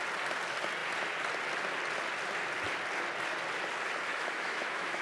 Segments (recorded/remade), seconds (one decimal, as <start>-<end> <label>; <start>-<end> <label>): 0.0-4.1 recorded; 4.1-5.0 remade